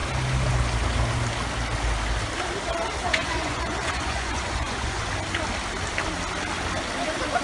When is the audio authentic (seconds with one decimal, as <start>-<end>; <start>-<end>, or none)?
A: 0.0-3.0; 5.1-7.4